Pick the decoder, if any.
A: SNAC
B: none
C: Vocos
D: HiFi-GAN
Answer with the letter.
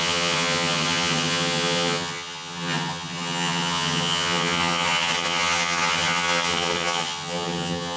D